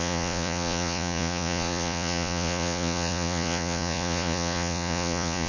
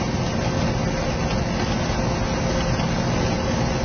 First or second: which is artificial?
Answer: first